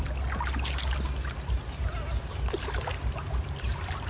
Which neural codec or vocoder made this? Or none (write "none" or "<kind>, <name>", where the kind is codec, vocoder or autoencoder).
none